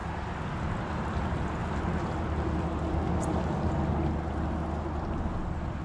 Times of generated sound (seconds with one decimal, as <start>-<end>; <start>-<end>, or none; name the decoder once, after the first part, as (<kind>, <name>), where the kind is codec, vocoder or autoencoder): 0.0-1.2 (vocoder, BigVGAN v2); 1.6-3.4